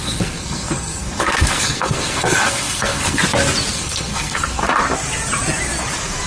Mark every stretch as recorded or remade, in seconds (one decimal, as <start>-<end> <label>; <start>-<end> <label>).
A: 0.0-3.2 remade; 3.2-3.7 recorded; 3.7-4.6 remade; 4.6-6.3 recorded